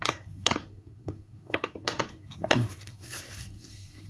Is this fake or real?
fake